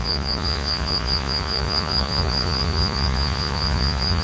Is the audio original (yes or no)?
no